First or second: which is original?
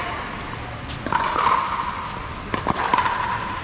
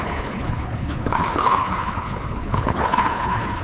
first